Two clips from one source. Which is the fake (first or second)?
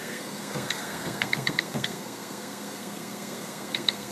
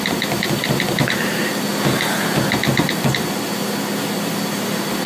first